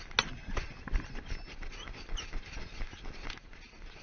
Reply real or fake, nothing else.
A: real